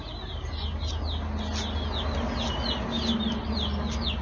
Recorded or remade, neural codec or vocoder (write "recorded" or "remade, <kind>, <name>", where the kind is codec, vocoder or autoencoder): recorded